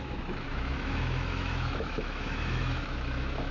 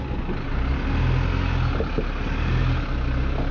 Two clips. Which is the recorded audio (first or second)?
second